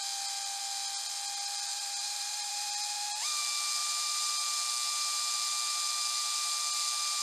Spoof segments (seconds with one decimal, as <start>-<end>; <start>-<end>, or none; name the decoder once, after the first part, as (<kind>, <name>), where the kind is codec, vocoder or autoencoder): 1.7-3.4 (vocoder, BigVGAN v2); 3.8-4.3